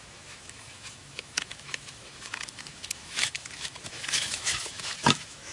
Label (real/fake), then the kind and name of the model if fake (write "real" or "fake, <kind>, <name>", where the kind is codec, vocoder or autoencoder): fake, autoencoder, DAC-VAE